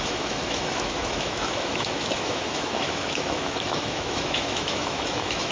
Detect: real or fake fake